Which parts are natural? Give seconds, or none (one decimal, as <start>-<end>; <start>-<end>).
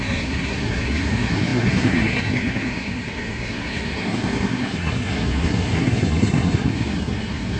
none